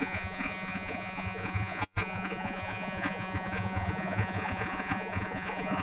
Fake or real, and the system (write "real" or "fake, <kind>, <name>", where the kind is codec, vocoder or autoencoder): fake, vocoder, Vocos